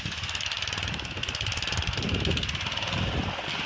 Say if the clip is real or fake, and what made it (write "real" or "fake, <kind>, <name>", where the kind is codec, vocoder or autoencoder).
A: real